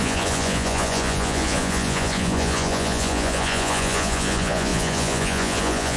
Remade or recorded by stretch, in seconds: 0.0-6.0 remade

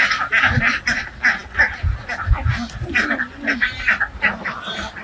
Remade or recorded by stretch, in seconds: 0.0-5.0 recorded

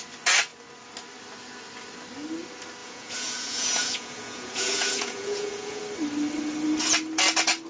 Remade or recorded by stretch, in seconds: 0.0-2.8 recorded; 2.8-5.8 remade; 5.8-7.7 recorded

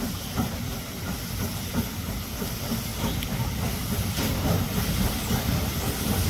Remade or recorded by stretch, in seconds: 0.0-6.3 recorded

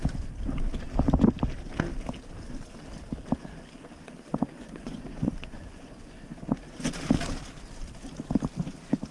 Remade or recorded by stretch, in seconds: 0.0-4.3 recorded; 4.3-6.9 remade; 6.9-9.1 recorded